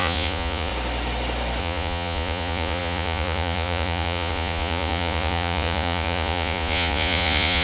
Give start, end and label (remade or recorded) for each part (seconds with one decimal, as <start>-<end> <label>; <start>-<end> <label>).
0.0-0.7 remade; 0.7-1.6 recorded; 1.6-7.6 remade